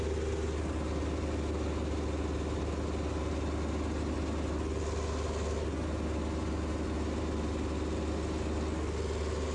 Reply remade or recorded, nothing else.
recorded